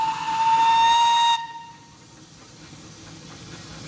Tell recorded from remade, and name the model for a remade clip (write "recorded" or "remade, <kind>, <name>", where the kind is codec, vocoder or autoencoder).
recorded